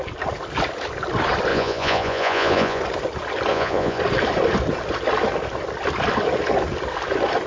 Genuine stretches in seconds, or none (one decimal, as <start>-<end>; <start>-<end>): 0.0-1.5; 2.8-3.5; 4.0-7.5